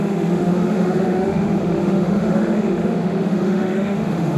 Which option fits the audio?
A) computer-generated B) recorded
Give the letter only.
A